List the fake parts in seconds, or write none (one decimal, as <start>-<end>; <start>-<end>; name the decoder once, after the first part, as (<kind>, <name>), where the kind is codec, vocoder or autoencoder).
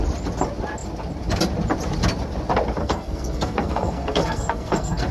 2.8-5.1 (codec, SNAC)